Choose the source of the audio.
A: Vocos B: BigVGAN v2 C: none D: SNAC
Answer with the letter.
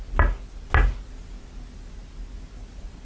C